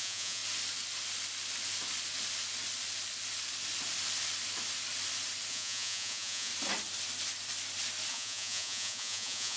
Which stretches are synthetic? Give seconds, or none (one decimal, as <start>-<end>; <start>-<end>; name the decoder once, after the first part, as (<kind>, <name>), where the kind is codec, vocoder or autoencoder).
0.0-0.4 (vocoder, Vocos); 5.5-6.5; 8.1-9.6